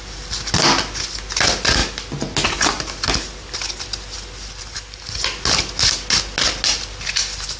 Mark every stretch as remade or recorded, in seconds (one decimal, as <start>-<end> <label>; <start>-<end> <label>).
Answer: 0.0-7.6 recorded